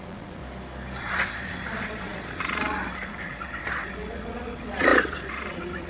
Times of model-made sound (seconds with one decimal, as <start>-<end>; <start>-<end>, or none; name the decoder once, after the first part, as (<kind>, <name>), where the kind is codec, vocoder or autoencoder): 0.0-0.4 (vocoder, Vocos); 1.0-5.9